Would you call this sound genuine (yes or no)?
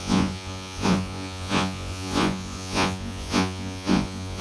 no